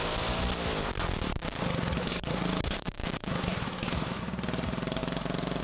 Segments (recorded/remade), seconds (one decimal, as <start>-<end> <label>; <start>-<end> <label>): 0.0-3.0 recorded; 3.0-4.2 remade; 4.2-5.6 recorded